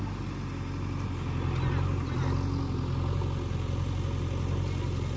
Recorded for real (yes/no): yes